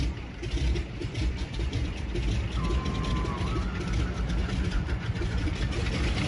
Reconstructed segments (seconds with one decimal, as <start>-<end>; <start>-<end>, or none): 1.0-2.0; 4.4-5.5